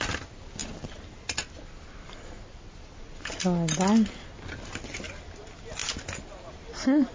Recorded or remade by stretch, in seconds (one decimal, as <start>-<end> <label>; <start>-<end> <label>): 0.0-7.1 recorded

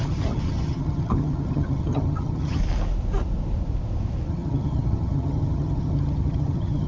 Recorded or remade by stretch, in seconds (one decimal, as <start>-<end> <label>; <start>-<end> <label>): 0.0-2.6 remade; 2.6-4.3 recorded; 4.3-6.9 remade

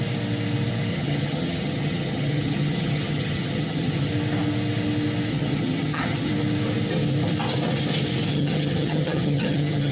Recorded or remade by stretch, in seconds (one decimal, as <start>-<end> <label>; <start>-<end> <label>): 0.0-0.9 recorded; 0.9-4.1 remade; 4.1-5.3 recorded; 5.3-6.3 remade; 6.3-8.3 recorded; 8.3-9.9 remade

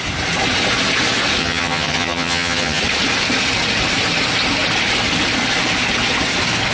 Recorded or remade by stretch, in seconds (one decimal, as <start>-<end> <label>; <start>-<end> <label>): 0.0-1.4 recorded; 1.4-2.8 remade; 2.8-6.7 recorded